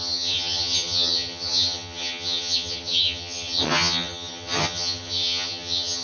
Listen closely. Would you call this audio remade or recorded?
remade